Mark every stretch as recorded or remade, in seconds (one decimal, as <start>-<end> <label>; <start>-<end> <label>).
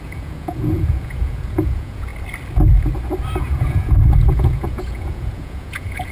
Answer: 0.0-2.1 remade; 2.1-3.4 recorded; 3.4-6.1 remade